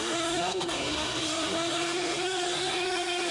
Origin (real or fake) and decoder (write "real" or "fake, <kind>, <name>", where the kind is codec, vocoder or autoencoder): fake, codec, SNAC